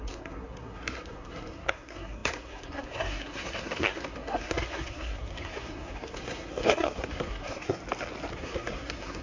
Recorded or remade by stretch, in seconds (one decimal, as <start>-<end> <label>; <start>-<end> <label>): 0.0-7.8 remade; 7.8-8.3 recorded; 8.3-9.2 remade